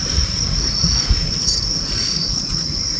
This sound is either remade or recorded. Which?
remade